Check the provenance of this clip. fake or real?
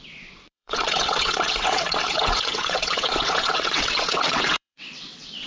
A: fake